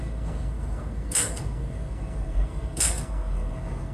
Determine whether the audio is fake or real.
fake